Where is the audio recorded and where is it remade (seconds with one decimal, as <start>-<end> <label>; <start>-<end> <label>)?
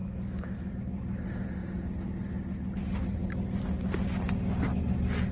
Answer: 0.0-0.7 remade; 0.7-5.3 recorded